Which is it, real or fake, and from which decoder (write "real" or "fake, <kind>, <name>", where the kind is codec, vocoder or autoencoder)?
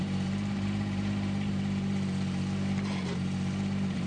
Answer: fake, vocoder, BigVGAN v2